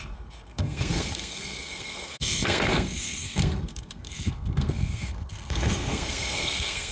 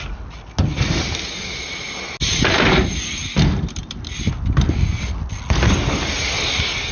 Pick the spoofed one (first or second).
first